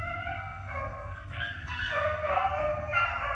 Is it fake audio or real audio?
fake